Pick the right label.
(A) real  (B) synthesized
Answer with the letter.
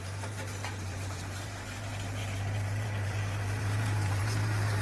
B